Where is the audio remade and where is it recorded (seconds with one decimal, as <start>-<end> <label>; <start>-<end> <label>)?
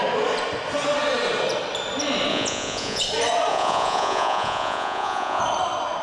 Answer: 0.0-2.3 recorded; 2.3-3.0 remade; 3.0-3.5 recorded; 3.5-5.4 remade; 5.4-6.0 recorded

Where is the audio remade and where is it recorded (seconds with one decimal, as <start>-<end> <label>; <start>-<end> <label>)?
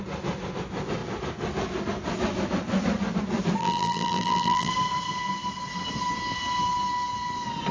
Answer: 0.0-3.6 recorded; 3.6-4.7 remade; 4.7-7.7 recorded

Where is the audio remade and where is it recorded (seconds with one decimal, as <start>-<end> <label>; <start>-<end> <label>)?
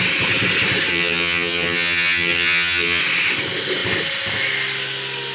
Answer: 0.0-0.9 recorded; 0.9-3.0 remade; 3.0-5.3 recorded